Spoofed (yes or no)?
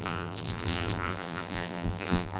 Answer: yes